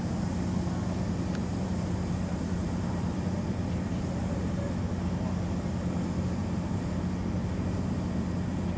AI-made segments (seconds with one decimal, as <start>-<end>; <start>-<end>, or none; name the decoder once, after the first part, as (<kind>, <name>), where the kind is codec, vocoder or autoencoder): 1.5-4.2 (vocoder, BigVGAN v2); 6.4-7.0